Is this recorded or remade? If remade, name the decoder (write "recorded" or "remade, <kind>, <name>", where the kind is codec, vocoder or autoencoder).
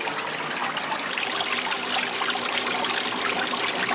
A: recorded